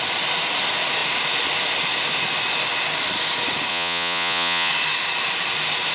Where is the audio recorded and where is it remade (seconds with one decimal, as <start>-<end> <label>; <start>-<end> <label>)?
0.0-3.7 recorded; 3.7-4.7 remade; 4.7-5.9 recorded